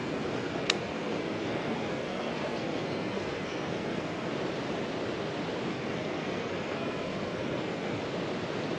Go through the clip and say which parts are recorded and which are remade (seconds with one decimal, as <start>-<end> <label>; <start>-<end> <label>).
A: 0.0-4.3 remade; 4.3-5.7 recorded; 5.7-8.0 remade; 8.0-8.8 recorded